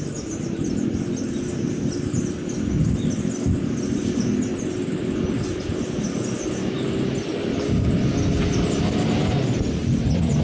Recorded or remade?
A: recorded